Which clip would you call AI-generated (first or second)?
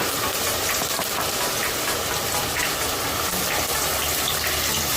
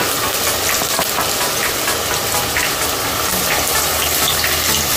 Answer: first